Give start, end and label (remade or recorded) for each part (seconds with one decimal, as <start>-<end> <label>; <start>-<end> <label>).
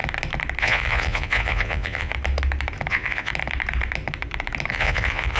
0.0-0.6 recorded; 0.6-2.1 remade; 2.1-2.9 recorded; 2.9-3.3 remade; 3.3-4.7 recorded; 4.7-5.4 remade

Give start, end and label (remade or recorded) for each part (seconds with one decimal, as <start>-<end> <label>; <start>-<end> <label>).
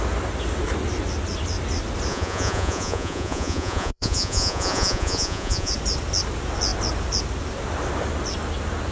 0.0-2.1 recorded; 2.1-5.7 remade; 5.7-8.9 recorded